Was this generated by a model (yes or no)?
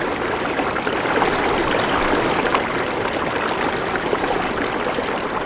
no